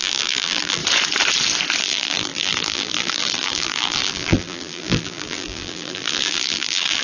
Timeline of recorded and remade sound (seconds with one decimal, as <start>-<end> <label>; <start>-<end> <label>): 0.0-0.8 remade; 0.8-1.8 recorded; 1.8-7.0 remade